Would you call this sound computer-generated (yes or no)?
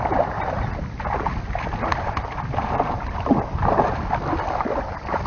no